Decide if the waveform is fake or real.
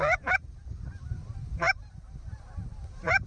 fake